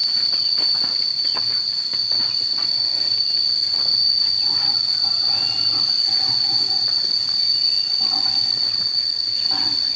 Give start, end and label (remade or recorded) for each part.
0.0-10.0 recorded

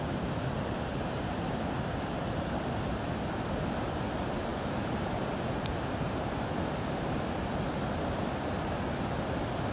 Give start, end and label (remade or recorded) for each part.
0.0-0.9 recorded; 0.9-1.6 remade; 1.6-4.5 recorded; 4.5-5.3 remade; 5.3-9.7 recorded

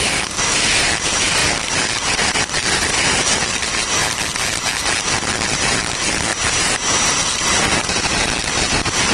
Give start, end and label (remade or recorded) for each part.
0.0-6.3 remade; 6.3-7.2 recorded; 7.2-9.1 remade

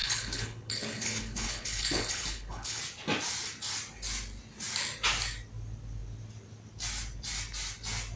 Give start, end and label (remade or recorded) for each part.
0.0-2.8 remade; 2.8-8.2 recorded

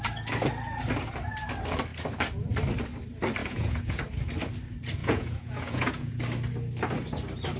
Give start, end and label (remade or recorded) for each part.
0.0-3.4 recorded; 3.4-4.0 remade; 4.0-5.0 recorded; 5.0-6.2 remade; 6.2-7.6 recorded